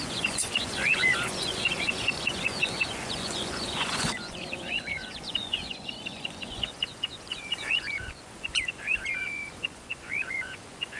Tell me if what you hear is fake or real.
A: fake